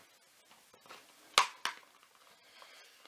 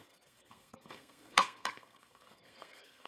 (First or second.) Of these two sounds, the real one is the first